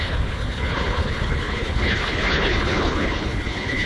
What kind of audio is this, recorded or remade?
remade